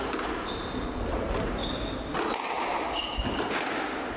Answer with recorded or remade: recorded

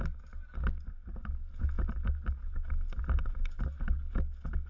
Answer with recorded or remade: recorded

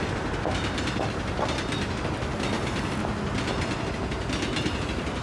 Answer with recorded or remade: recorded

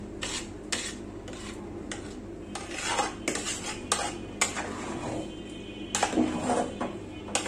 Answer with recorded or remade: recorded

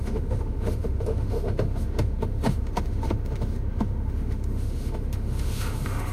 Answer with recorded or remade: remade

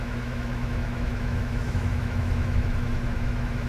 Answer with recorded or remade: remade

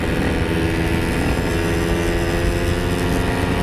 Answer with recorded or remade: recorded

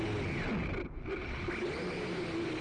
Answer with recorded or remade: recorded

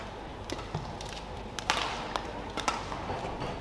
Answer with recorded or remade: recorded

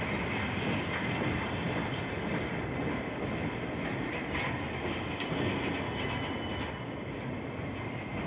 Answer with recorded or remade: recorded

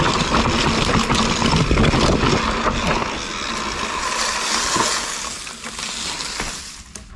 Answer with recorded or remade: recorded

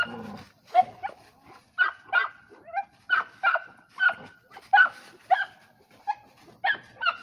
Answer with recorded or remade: recorded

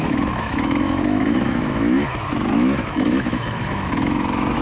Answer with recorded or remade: remade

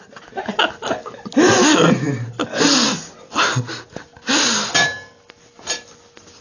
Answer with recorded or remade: recorded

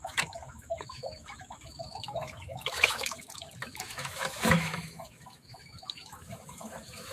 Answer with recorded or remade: remade